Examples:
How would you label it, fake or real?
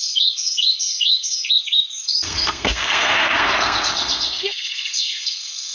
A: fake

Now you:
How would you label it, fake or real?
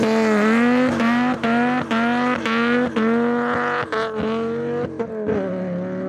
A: real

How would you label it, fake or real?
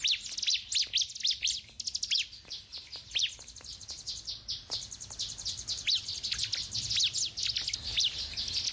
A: real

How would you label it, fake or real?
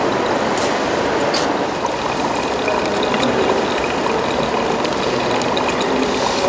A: real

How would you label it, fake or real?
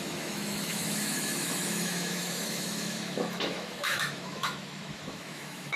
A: fake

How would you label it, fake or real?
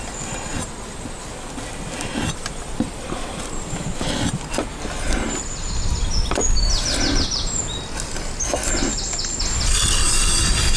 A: real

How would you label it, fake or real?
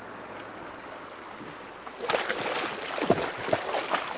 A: real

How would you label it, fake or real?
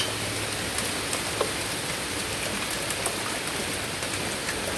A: real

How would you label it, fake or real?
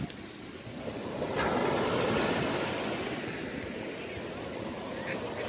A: real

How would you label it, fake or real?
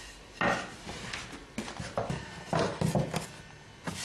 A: real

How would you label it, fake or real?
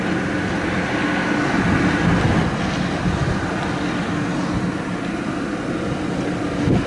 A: real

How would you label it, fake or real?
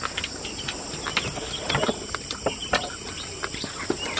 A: real